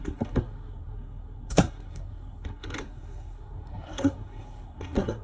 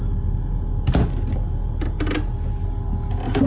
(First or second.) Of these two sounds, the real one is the second